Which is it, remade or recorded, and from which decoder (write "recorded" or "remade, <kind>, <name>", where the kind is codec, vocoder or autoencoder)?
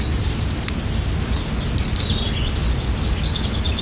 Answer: recorded